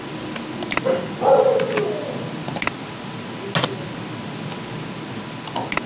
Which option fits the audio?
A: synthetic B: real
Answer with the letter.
B